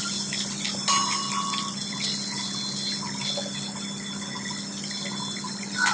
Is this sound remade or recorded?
recorded